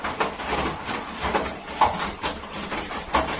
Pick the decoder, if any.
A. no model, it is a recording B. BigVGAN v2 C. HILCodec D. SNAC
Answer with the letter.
A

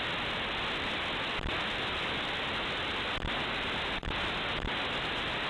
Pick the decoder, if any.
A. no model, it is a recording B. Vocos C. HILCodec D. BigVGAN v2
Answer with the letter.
A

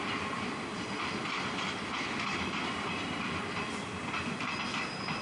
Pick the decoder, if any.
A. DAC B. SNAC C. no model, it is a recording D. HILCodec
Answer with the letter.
C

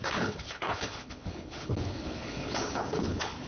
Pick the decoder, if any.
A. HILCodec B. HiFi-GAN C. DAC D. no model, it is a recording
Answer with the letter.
A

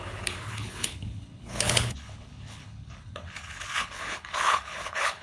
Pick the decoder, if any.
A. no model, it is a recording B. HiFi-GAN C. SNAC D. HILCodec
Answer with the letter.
D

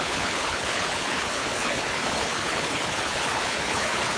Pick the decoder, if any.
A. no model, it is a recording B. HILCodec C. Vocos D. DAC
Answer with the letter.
B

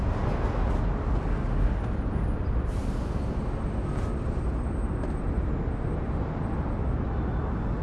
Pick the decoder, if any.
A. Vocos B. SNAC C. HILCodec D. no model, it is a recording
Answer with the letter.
D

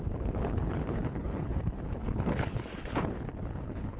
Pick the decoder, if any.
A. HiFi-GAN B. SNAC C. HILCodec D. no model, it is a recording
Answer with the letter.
C